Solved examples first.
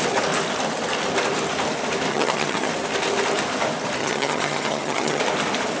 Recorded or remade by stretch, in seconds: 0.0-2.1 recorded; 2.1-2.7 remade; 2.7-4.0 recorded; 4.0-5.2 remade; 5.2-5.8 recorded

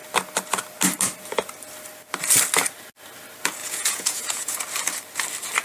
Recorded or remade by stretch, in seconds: 0.0-3.6 recorded; 3.6-4.6 remade; 4.6-5.6 recorded

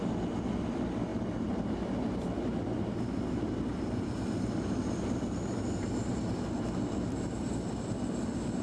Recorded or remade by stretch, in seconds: 0.0-8.6 recorded

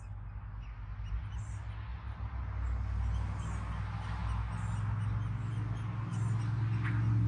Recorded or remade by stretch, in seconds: 0.0-7.3 recorded

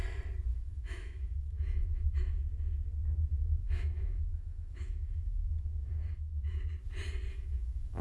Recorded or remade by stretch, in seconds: 0.0-0.5 recorded; 0.5-2.4 remade; 2.4-3.6 recorded; 3.6-6.6 remade; 6.6-7.3 recorded; 7.3-8.0 remade

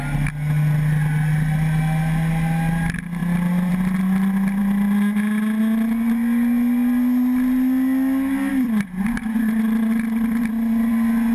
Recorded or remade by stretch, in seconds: 0.0-8.5 recorded; 8.5-10.9 remade; 10.9-11.3 recorded

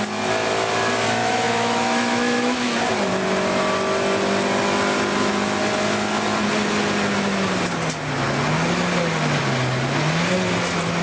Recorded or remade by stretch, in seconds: 0.0-1.2 recorded; 1.2-2.8 remade; 2.8-11.0 recorded